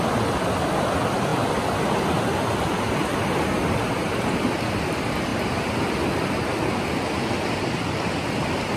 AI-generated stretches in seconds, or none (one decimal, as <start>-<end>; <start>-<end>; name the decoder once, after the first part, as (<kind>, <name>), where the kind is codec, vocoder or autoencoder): none